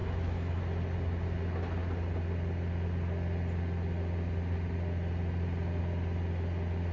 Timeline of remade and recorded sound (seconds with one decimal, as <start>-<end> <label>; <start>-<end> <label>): 0.0-0.6 remade; 0.6-6.9 recorded